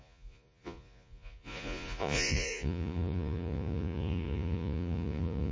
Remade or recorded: remade